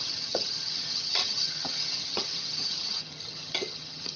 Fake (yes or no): yes